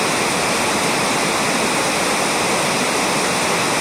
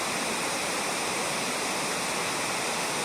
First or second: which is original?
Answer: first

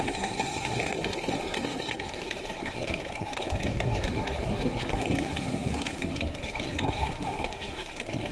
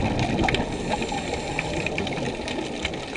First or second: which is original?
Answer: second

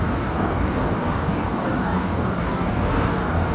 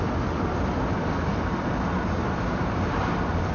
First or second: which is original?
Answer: second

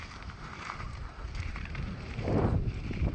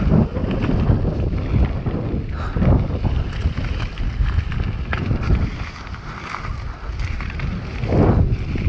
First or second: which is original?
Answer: second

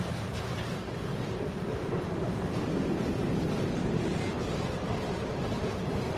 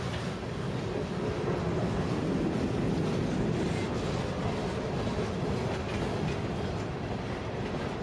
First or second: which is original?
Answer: second